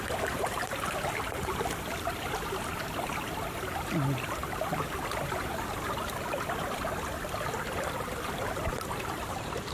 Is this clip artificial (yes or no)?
yes